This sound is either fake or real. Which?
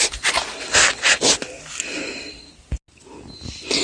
real